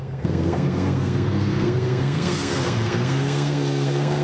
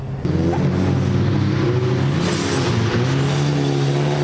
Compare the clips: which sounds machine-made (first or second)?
first